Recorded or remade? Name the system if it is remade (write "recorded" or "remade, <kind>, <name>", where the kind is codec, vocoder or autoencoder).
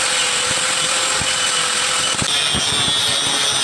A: recorded